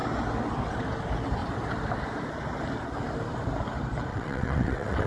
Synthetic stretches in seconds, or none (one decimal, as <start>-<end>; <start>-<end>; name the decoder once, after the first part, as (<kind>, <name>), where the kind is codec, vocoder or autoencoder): 4.1-5.1 (vocoder, WaveNeXt)